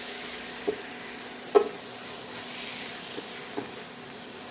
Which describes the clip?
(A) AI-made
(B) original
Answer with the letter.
B